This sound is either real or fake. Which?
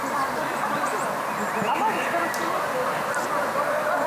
real